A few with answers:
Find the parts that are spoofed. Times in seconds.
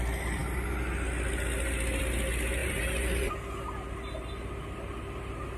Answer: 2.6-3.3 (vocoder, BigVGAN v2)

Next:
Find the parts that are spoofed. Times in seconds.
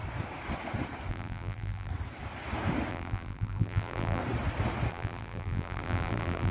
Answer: 1.1-1.9 (vocoder, BigVGAN v2); 2.9-4.2; 4.9-6.5